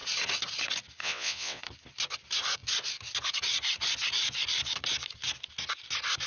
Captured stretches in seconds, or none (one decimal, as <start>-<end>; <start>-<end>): 0.0-1.0; 1.6-6.3